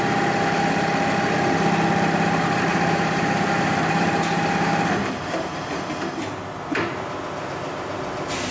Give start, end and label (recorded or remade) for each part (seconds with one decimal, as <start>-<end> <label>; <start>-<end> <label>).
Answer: 0.0-2.7 recorded; 2.7-5.7 remade; 5.7-8.5 recorded